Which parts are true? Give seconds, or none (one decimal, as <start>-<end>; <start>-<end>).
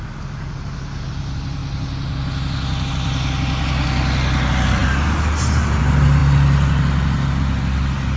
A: 0.0-8.2